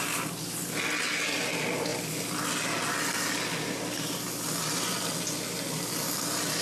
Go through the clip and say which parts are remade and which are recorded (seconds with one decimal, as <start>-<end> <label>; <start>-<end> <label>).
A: 0.0-6.6 recorded